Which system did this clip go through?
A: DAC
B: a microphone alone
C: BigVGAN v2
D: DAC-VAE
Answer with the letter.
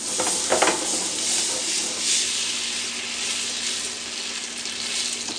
B